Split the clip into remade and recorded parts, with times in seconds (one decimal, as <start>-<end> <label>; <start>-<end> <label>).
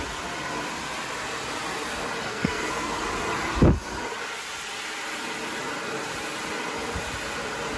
0.0-2.3 recorded; 2.3-3.0 remade; 3.0-7.8 recorded